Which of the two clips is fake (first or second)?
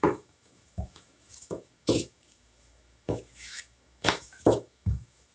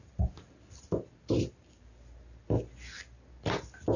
first